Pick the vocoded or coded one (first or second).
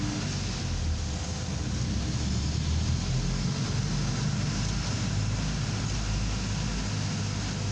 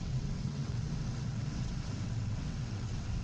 second